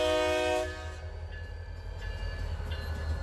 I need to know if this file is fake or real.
real